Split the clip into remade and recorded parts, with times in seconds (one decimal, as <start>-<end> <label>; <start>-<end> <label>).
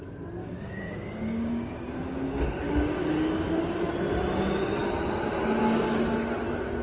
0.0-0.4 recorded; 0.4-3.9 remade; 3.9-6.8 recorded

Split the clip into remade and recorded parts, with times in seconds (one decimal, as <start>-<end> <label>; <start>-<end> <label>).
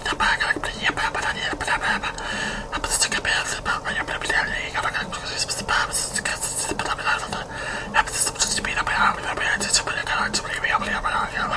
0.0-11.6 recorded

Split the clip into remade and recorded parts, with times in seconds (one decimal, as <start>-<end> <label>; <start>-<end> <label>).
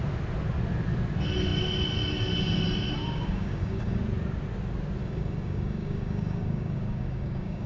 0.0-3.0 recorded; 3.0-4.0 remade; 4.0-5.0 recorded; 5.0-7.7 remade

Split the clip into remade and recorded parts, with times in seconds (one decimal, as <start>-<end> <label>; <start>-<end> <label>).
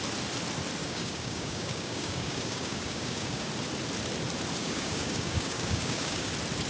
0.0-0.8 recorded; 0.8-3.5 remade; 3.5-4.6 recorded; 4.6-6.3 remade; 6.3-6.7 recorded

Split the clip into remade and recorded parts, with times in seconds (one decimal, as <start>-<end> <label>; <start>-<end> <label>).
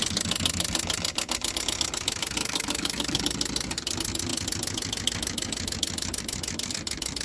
0.0-2.4 recorded; 2.4-3.2 remade; 3.2-7.2 recorded